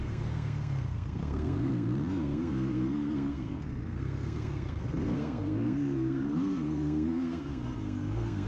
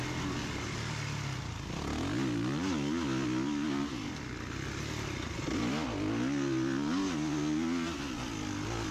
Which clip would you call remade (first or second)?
first